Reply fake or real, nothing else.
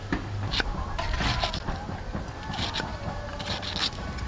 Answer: real